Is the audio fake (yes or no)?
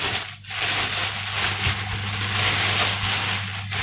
no